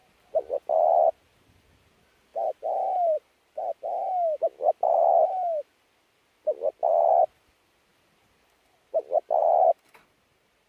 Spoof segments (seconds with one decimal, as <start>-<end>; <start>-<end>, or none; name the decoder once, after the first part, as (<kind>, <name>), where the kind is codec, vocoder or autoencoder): 0.0-1.8 (vocoder, BigVGAN v2); 2.3-6.1; 7.9-9.5